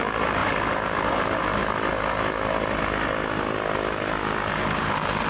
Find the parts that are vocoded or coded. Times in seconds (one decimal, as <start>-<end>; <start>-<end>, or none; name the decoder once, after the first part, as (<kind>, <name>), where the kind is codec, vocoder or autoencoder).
0.0-1.6 (vocoder, BigVGAN v2); 4.5-5.3